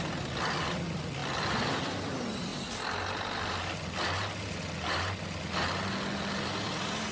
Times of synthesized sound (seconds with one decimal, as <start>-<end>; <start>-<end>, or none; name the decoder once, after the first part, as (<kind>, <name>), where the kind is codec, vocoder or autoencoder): none